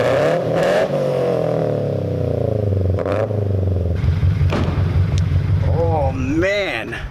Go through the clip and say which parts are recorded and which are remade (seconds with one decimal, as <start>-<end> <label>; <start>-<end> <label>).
0.0-1.6 remade; 1.6-2.7 recorded; 2.7-7.1 remade